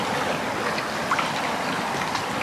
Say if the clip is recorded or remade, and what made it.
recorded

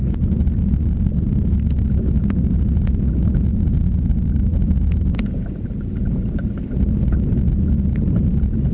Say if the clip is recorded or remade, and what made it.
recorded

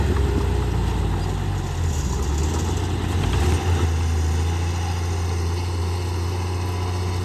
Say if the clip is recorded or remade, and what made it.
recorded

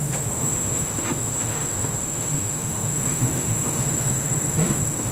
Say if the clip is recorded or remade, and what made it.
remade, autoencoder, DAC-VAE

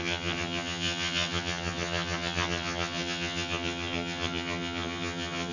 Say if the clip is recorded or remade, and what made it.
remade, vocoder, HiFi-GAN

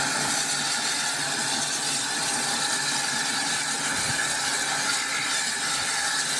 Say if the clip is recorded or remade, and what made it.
recorded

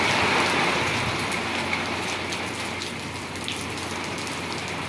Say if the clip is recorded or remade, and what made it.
recorded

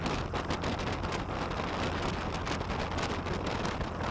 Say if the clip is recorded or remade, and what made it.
recorded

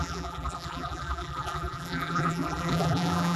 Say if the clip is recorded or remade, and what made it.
remade, vocoder, BigVGAN v2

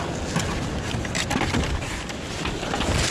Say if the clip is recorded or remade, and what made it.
recorded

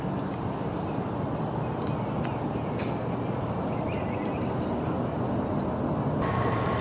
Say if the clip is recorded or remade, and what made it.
recorded